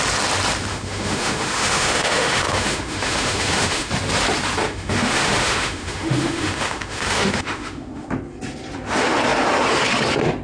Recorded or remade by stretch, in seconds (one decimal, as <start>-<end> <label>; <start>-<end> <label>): 0.0-0.7 recorded; 0.7-3.9 remade; 3.9-4.6 recorded; 4.6-8.1 remade; 8.1-10.4 recorded